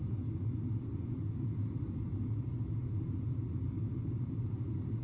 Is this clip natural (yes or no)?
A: yes